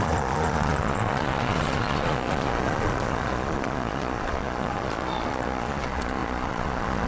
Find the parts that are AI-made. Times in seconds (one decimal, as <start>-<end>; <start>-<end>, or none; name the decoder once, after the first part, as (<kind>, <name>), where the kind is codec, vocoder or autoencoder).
0.0-7.1 (vocoder, Vocos)